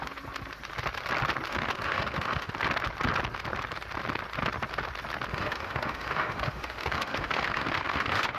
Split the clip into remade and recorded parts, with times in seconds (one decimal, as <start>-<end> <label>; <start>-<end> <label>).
0.0-1.5 recorded; 1.5-2.5 remade; 2.5-5.3 recorded; 5.3-8.4 remade